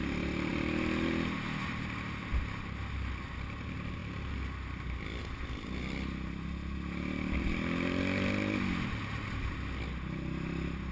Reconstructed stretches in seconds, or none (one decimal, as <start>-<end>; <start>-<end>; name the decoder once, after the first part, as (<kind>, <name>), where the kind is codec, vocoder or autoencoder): none